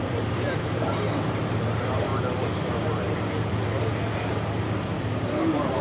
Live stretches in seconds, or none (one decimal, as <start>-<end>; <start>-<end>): 2.1-5.8